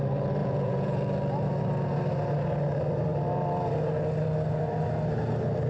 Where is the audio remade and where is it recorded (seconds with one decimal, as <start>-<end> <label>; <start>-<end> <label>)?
0.0-0.4 recorded; 0.4-1.0 remade; 1.0-5.7 recorded